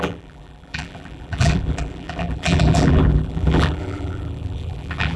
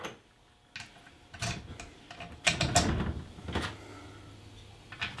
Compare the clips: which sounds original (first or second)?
second